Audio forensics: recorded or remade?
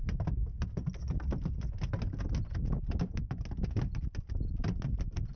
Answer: recorded